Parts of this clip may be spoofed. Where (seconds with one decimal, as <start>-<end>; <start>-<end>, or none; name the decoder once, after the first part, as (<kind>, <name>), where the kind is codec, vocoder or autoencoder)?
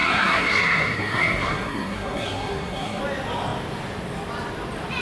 0.0-3.0 (codec, SNAC)